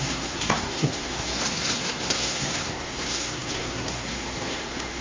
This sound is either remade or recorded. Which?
remade